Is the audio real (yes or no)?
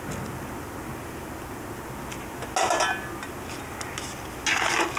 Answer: yes